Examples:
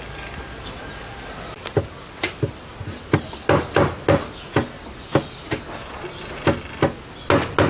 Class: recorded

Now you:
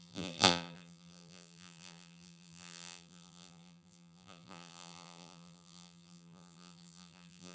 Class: remade